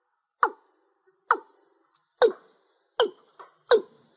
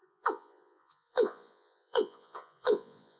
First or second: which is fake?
second